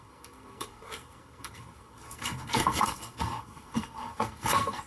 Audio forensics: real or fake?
fake